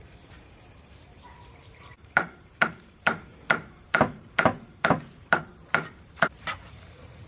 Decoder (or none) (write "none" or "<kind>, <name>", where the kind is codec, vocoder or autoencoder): vocoder, BigVGAN v2